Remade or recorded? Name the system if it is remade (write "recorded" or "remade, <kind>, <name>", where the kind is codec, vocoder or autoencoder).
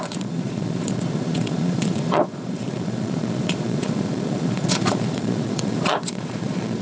remade, vocoder, Vocos